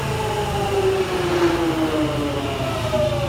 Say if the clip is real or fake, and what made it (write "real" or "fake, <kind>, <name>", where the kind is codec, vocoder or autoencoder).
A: real